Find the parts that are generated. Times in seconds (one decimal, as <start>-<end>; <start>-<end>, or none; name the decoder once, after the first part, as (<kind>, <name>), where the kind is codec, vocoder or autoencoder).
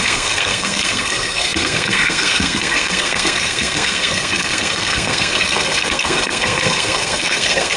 0.0-7.8 (codec, SNAC)